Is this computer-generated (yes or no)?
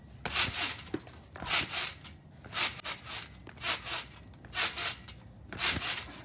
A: no